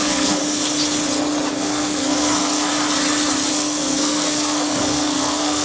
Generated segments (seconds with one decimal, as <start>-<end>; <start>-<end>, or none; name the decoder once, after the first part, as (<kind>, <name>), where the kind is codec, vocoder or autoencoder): 0.0-0.4 (codec, SNAC); 1.5-2.7; 3.5-5.6